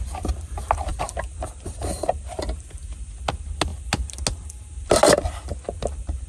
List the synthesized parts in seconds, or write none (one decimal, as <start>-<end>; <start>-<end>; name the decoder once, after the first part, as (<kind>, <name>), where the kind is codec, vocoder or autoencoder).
0.9-2.4 (vocoder, BigVGAN v2)